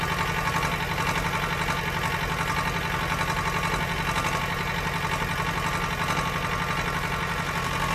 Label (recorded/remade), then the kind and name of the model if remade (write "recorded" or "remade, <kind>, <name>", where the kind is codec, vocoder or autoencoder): recorded